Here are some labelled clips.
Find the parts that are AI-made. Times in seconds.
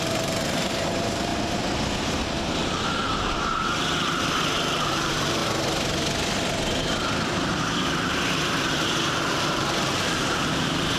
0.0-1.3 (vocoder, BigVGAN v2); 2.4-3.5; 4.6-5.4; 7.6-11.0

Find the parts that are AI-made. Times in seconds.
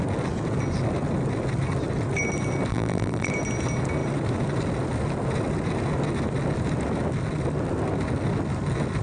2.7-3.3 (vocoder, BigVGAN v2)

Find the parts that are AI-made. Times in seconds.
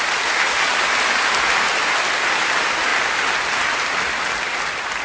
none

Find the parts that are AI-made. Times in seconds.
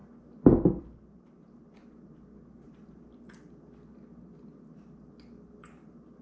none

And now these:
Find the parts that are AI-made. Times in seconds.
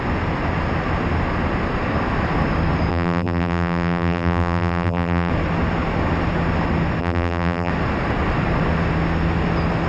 2.9-5.3 (vocoder, BigVGAN v2); 7.0-7.7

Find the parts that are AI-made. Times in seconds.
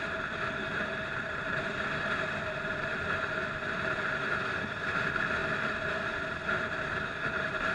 none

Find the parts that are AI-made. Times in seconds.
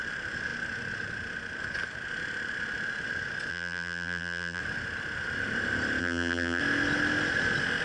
3.5-4.6 (vocoder, BigVGAN v2); 6.0-6.6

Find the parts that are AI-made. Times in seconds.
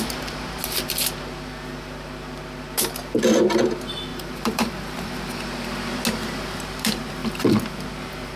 4.1-5.2 (vocoder, BigVGAN v2)